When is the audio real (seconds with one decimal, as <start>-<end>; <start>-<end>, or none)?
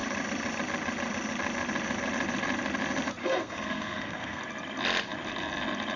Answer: 0.0-3.2; 4.4-6.0